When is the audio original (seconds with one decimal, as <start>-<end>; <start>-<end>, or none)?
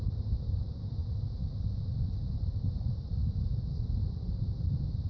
0.0-5.1